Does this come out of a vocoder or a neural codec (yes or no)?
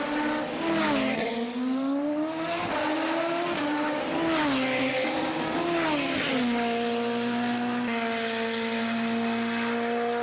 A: no